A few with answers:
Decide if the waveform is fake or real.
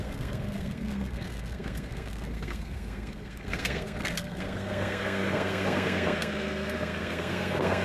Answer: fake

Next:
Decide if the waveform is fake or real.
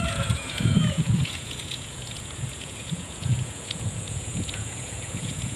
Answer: fake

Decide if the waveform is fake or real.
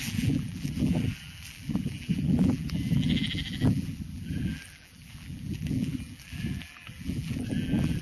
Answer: fake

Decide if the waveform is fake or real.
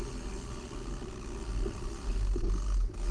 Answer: real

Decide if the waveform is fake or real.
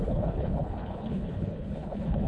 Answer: fake